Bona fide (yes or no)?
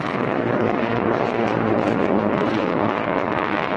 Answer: no